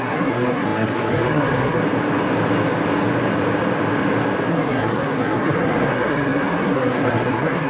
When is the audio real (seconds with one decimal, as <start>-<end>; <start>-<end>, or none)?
1.8-4.5